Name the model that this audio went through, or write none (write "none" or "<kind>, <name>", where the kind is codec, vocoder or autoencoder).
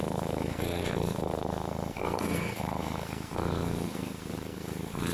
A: codec, SNAC